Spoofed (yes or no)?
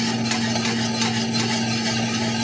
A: no